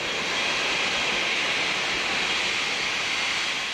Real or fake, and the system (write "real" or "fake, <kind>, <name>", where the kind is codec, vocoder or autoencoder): real